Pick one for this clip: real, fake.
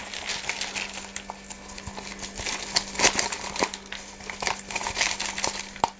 real